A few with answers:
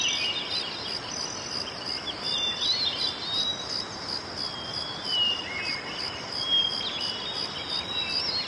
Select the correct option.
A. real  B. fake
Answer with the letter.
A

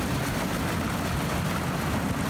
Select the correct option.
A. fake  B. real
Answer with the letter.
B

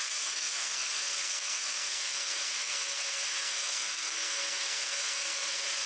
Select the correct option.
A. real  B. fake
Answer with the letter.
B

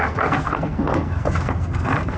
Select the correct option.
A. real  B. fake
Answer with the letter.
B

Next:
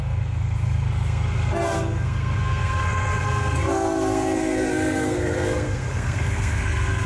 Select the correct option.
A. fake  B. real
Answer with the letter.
A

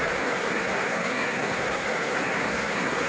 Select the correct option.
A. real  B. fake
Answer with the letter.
B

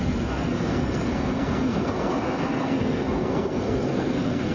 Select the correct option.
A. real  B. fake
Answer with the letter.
B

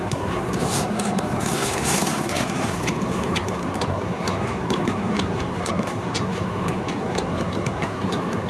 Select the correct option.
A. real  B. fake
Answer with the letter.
B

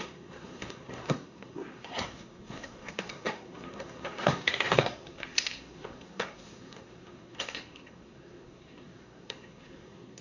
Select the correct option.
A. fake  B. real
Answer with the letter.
A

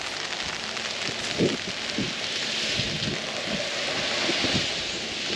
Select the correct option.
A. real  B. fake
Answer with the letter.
A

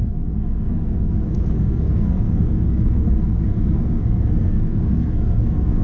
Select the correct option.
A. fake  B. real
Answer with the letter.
A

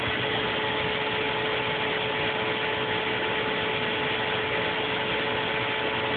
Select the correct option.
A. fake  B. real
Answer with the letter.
B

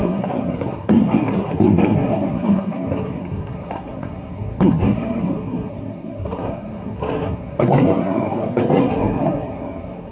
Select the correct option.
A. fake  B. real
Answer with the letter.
A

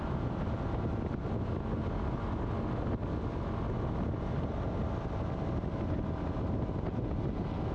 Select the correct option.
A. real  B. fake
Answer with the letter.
A